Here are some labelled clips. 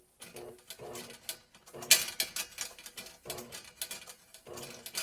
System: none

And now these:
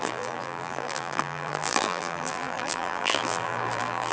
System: vocoder, BigVGAN v2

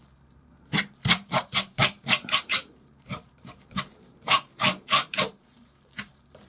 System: vocoder, BigVGAN v2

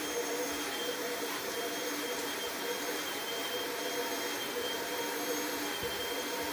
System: vocoder, BigVGAN v2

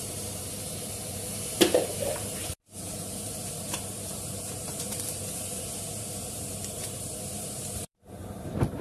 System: vocoder, BigVGAN v2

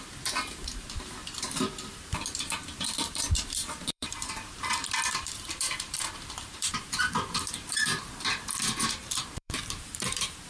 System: vocoder, BigVGAN v2